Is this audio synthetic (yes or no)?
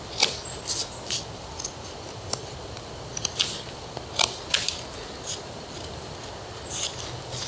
no